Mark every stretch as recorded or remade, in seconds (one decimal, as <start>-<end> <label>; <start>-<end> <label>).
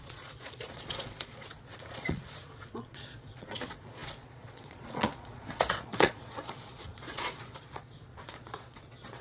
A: 0.0-9.2 remade